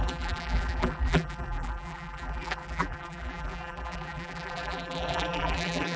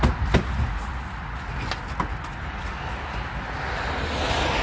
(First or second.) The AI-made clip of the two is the first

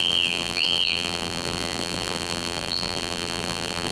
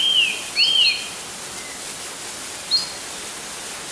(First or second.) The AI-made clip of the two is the first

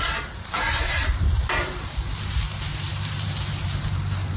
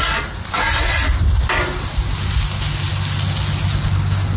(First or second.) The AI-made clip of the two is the first